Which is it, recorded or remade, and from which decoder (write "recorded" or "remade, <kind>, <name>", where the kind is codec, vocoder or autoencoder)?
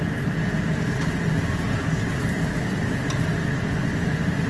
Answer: recorded